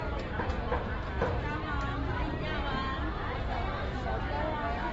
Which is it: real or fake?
real